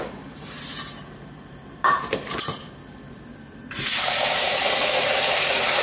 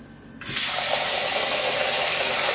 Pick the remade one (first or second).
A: first